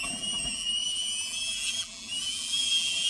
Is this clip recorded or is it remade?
remade